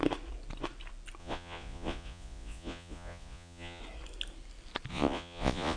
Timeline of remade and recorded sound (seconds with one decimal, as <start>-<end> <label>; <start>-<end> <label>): 0.0-1.2 recorded; 1.2-3.8 remade; 3.8-4.9 recorded; 4.9-5.8 remade